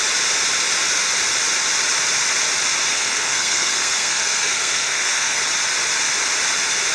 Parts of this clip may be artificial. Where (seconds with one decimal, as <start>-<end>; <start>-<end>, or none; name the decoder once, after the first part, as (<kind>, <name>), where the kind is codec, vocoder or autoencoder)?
2.9-5.4 (codec, SNAC)